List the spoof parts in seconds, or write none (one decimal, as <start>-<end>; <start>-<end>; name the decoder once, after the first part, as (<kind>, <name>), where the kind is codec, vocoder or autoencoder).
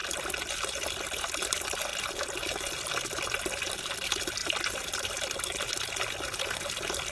none